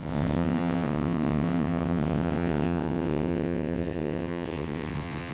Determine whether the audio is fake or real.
fake